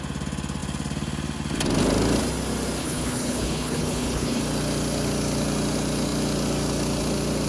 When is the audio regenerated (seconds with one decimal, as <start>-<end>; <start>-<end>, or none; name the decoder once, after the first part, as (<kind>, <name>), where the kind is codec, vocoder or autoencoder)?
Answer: 2.8-4.4 (codec, HILCodec)